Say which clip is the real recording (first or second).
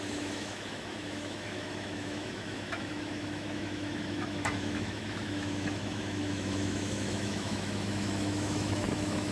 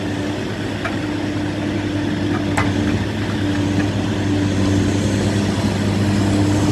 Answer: second